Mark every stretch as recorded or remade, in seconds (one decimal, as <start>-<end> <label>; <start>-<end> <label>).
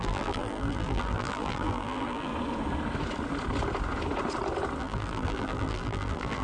0.0-2.3 remade; 2.3-4.8 recorded; 4.8-6.4 remade